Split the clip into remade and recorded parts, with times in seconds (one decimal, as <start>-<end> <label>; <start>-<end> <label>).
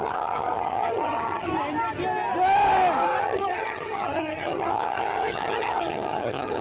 0.0-1.5 remade; 1.5-3.2 recorded; 3.2-6.6 remade